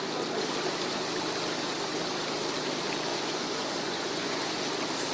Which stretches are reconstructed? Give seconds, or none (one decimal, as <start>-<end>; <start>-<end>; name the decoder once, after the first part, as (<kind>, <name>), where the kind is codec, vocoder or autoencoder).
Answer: 3.1-4.6 (vocoder, Vocos)